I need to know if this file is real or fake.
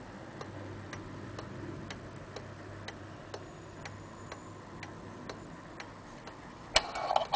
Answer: real